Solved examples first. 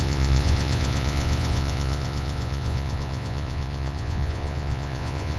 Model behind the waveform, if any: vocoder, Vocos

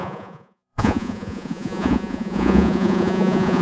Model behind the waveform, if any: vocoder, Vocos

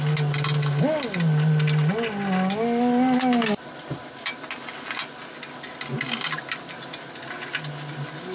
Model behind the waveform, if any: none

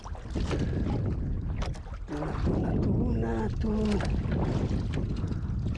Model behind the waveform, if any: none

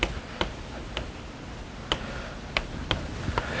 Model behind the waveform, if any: none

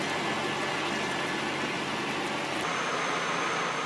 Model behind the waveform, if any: none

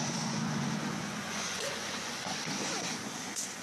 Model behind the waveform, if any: vocoder, Vocos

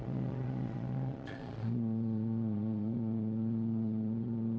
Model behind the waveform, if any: vocoder, Vocos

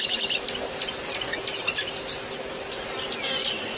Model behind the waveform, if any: none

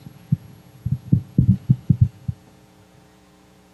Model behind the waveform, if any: vocoder, Vocos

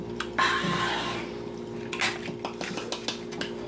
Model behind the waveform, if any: none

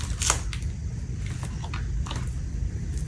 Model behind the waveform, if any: none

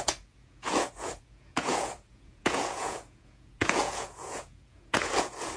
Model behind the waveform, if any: vocoder, Vocos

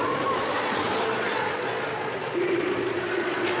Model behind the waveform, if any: vocoder, Vocos